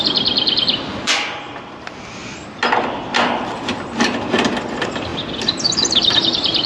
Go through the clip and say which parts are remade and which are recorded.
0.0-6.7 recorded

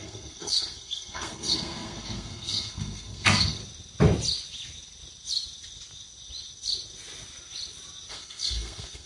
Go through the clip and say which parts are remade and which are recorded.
0.0-3.6 remade; 3.6-8.1 recorded; 8.1-9.1 remade

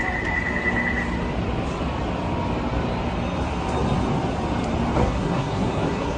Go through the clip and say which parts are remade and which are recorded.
0.0-5.0 recorded; 5.0-6.2 remade